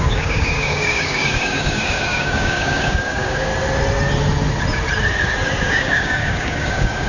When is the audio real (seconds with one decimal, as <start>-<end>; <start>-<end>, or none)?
3.5-5.6